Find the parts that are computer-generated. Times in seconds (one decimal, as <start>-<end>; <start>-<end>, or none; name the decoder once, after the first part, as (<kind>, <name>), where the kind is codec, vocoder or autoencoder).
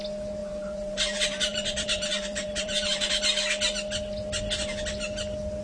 0.4-3.1 (vocoder, BigVGAN v2)